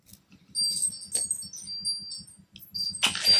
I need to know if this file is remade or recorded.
recorded